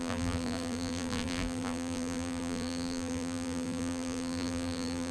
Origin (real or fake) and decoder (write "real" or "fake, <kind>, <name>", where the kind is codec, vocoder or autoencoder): fake, vocoder, BigVGAN v2